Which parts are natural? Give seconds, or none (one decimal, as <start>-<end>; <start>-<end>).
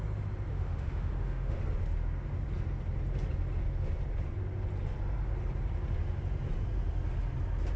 0.0-0.5; 1.6-7.8